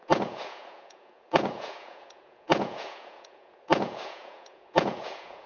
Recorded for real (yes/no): no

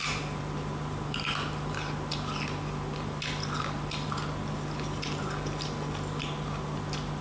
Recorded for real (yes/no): yes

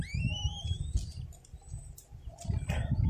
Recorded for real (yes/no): yes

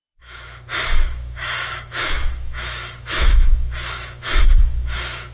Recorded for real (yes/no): no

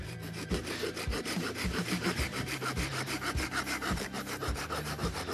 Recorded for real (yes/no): no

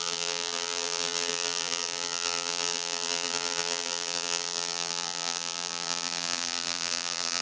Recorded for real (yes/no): no